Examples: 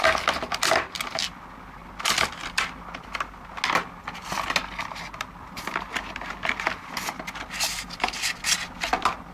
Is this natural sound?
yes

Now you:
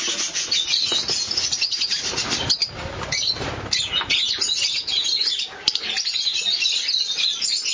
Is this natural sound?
yes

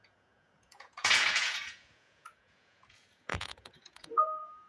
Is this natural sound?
no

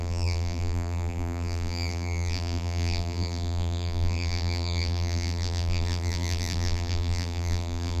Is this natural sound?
no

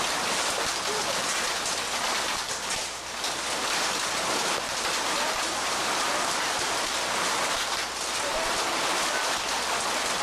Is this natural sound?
no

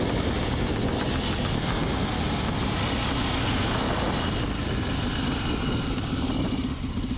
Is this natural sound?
yes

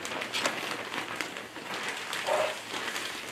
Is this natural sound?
yes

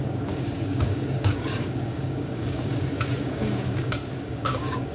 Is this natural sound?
no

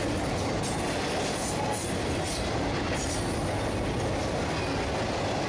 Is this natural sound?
yes